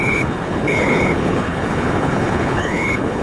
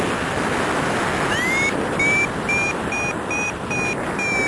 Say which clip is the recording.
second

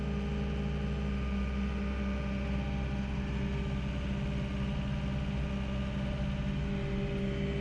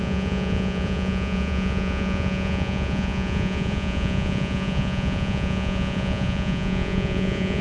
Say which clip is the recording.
first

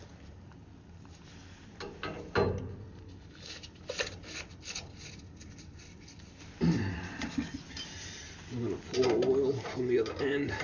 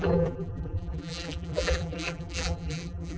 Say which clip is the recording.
first